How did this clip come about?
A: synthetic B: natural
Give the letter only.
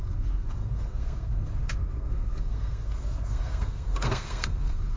A